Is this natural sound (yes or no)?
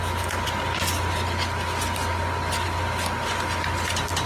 yes